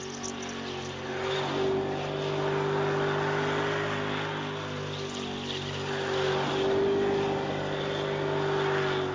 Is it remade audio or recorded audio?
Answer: recorded